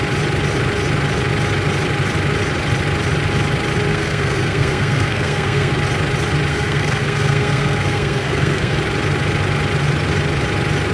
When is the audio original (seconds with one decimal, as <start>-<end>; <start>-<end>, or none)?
0.0-3.9; 5.7-6.5; 8.8-10.9

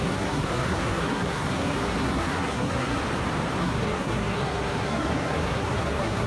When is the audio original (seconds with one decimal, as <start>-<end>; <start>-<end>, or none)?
3.0-3.6